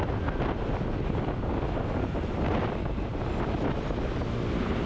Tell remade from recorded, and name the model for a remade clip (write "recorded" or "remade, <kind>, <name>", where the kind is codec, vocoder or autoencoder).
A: recorded